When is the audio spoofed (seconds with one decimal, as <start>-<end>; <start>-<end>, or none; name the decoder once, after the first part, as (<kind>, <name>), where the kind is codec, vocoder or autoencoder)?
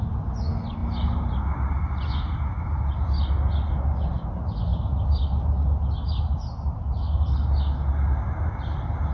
none